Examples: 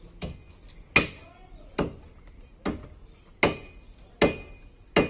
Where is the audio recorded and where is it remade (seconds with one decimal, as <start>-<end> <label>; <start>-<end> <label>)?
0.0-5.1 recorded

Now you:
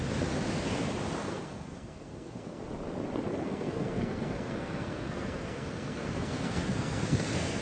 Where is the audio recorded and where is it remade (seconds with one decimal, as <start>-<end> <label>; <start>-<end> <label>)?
0.0-1.2 recorded; 1.2-2.6 remade; 2.6-3.3 recorded; 3.3-7.6 remade

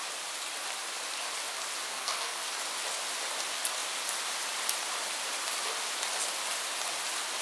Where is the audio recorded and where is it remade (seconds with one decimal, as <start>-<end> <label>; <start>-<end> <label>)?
0.0-1.9 recorded; 1.9-2.4 remade; 2.4-7.4 recorded